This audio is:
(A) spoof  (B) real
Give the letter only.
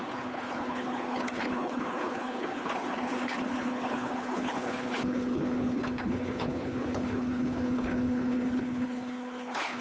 A